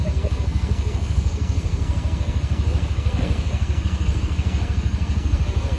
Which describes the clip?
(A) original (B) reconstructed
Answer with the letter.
B